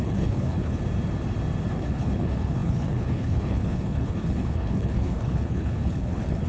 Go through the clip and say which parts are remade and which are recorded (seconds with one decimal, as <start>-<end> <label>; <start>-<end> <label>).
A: 0.0-0.8 remade; 0.8-1.7 recorded; 1.7-6.5 remade